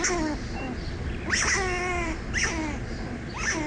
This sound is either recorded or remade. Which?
recorded